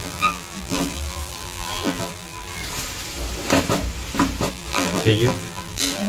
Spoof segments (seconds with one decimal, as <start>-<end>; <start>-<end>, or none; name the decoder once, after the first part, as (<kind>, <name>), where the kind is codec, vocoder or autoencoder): 0.0-2.6 (vocoder, BigVGAN v2); 4.5-6.1